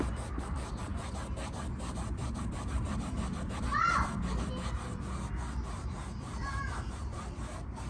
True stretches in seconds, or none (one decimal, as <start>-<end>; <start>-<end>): 0.0-7.9